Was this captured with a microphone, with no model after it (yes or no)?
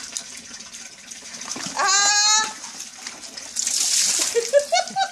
yes